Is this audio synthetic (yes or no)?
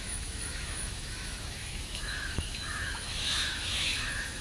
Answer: yes